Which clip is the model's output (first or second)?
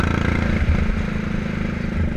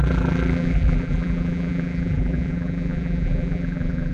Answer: second